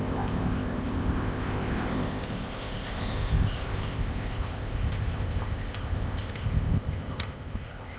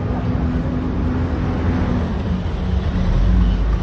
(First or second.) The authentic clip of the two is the second